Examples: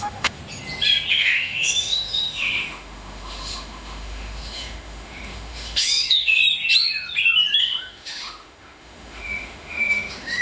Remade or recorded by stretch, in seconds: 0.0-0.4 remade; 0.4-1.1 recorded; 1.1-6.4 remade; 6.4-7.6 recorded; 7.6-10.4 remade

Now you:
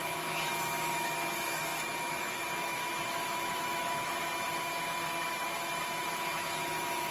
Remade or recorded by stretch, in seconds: 0.0-7.1 remade

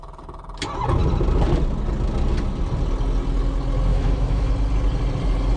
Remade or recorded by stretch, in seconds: 0.0-3.9 recorded; 3.9-4.5 remade; 4.5-5.6 recorded

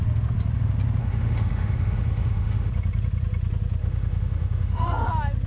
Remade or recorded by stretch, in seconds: 0.0-1.0 recorded; 1.0-2.7 remade; 2.7-3.8 recorded; 3.8-5.1 remade; 5.1-5.5 recorded